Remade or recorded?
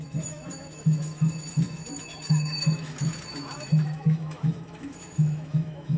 remade